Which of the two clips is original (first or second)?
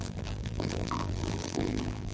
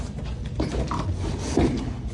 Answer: second